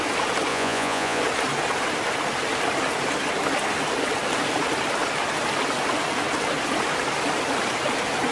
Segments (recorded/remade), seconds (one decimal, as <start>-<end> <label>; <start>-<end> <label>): 0.0-0.5 recorded; 0.5-1.2 remade; 1.2-8.3 recorded